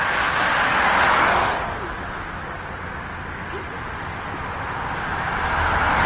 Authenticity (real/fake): real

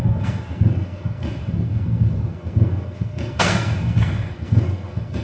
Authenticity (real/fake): fake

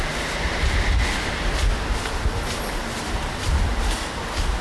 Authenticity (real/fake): real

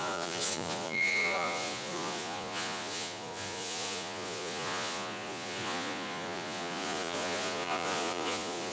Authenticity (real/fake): fake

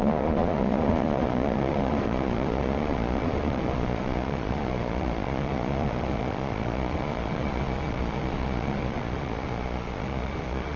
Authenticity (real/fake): fake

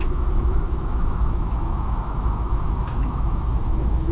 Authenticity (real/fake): fake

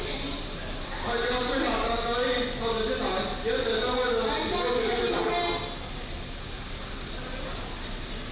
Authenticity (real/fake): real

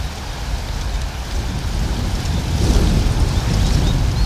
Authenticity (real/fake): fake